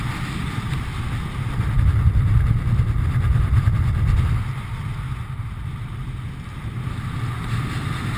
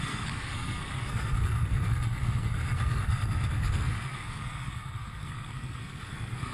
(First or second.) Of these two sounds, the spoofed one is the second